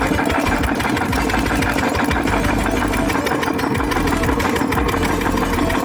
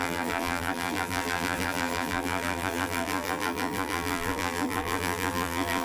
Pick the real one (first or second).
first